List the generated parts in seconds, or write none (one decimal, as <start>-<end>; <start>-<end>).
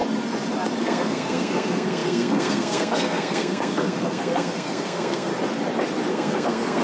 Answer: 0.8-5.3; 6.1-6.8